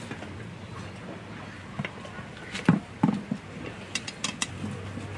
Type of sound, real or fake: real